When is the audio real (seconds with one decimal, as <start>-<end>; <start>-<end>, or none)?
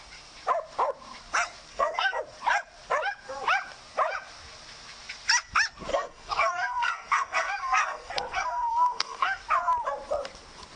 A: 0.0-1.7; 2.2-5.9; 9.4-10.8